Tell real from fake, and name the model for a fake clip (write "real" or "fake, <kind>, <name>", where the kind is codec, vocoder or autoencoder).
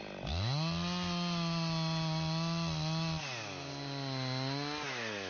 real